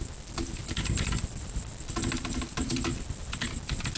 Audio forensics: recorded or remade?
recorded